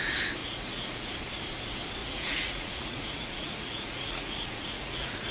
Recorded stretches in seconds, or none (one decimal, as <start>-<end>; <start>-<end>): 0.0-0.4; 1.1-2.0